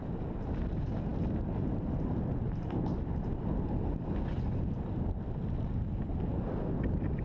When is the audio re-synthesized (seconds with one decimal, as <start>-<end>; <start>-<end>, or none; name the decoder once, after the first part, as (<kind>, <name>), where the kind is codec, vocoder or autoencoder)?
none